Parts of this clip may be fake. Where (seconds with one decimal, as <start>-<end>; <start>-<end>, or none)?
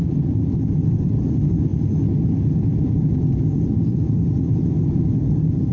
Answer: 0.0-1.7; 3.9-5.7